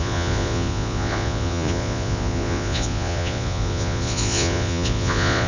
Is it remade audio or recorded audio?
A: remade